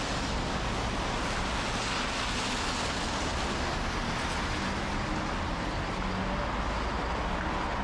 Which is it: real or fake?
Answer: real